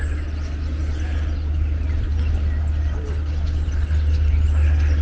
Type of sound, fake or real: real